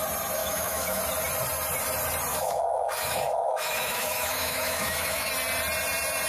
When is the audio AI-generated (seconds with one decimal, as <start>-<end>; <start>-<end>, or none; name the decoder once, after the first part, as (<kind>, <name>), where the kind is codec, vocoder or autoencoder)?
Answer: 0.4-1.0 (autoencoder, DAC-VAE); 2.3-5.3